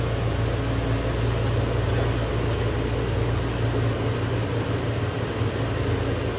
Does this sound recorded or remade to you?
recorded